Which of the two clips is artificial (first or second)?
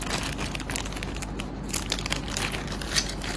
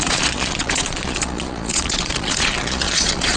second